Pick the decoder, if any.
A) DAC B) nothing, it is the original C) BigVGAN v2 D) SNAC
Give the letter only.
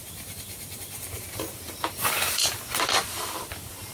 C